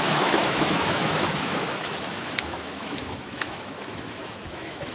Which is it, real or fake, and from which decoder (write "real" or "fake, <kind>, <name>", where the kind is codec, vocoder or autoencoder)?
fake, autoencoder, DAC-VAE